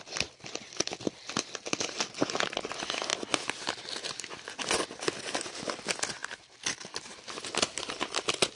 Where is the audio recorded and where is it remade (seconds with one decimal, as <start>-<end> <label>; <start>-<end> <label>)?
0.0-8.6 recorded